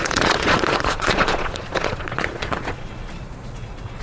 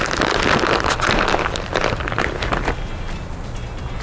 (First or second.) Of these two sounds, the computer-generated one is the first